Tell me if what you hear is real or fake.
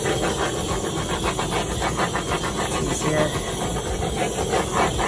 real